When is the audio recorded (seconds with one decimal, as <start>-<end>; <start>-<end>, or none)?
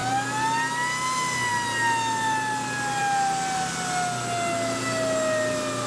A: 0.0-5.9